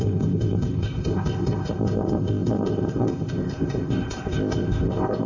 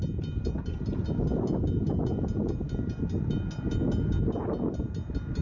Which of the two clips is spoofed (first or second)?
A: first